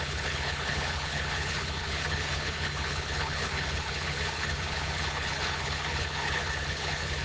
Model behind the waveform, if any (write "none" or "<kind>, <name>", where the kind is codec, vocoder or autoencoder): codec, HILCodec